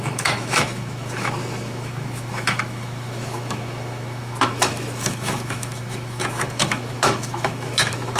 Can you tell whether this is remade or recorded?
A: remade